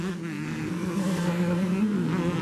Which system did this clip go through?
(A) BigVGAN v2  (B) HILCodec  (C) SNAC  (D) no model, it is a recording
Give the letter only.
C